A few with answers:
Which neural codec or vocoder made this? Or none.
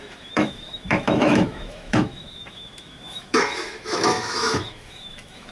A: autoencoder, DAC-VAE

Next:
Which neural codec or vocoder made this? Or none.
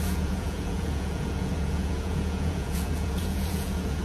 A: vocoder, Vocos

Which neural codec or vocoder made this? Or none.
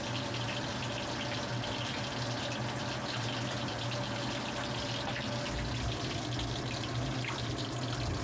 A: none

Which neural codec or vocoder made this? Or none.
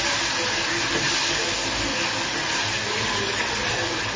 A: none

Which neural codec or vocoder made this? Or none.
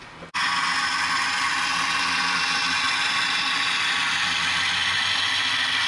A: none